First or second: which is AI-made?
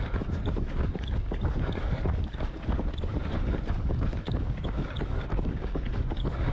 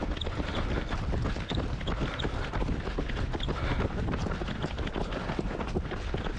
first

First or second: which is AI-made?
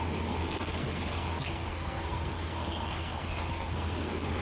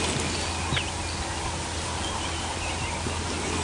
first